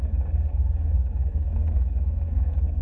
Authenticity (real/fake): fake